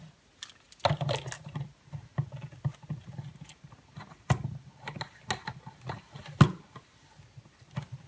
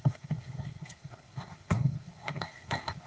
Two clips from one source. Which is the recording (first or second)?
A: first